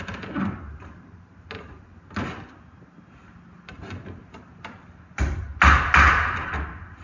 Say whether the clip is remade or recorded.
recorded